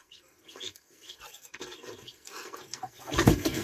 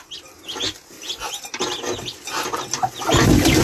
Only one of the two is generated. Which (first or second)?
first